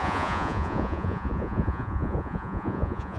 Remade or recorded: remade